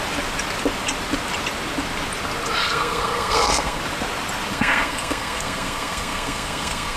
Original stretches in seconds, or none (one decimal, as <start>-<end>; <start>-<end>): 0.0-2.6; 3.8-4.5

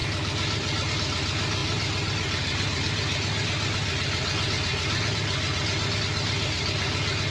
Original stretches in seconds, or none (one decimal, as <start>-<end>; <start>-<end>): 0.0-7.3

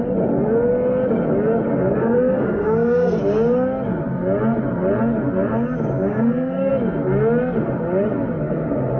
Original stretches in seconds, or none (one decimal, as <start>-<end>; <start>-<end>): 0.0-2.0; 3.2-6.1; 6.7-9.0

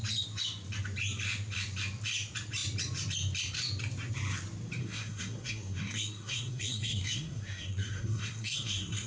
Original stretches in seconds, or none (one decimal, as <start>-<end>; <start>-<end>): 0.0-4.8

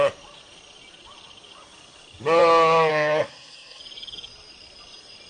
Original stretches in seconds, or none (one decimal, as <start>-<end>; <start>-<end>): 0.0-2.9; 3.8-5.3

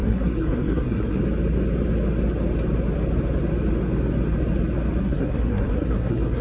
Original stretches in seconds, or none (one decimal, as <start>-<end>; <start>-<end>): 1.2-5.0